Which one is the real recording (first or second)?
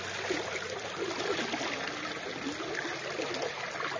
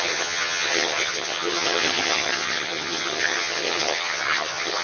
first